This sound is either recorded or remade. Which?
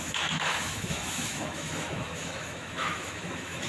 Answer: remade